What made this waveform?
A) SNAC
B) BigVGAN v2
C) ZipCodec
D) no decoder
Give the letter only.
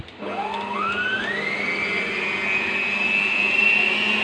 D